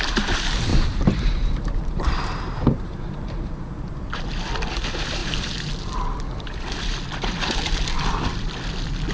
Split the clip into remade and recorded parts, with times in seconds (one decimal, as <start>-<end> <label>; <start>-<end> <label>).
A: 0.0-0.7 recorded; 0.7-4.2 remade; 4.2-5.2 recorded; 5.2-5.7 remade; 5.7-9.1 recorded